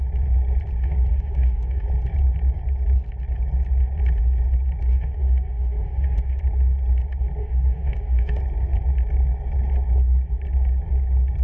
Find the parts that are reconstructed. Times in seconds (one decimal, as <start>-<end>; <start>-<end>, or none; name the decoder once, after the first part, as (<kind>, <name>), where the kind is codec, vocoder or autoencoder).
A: 1.1-1.8 (autoencoder, DAC-VAE); 4.9-6.4; 7.4-8.4